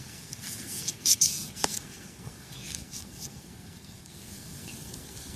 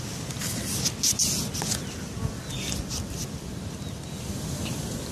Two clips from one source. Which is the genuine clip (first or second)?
second